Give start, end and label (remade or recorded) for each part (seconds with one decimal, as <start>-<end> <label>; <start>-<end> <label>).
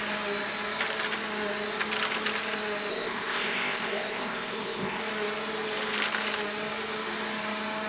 0.0-2.9 recorded; 2.9-5.0 remade; 5.0-7.9 recorded